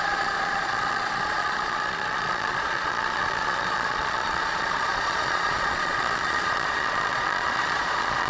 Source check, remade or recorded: remade